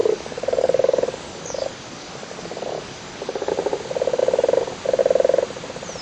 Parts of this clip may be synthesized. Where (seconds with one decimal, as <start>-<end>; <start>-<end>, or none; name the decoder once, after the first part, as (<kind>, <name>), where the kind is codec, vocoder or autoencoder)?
0.0-3.5 (codec, DAC)